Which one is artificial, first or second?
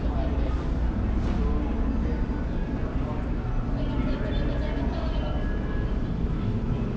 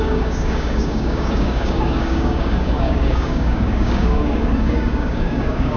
second